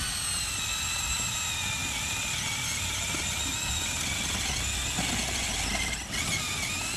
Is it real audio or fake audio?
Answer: real